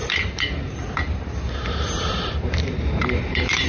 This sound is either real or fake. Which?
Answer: fake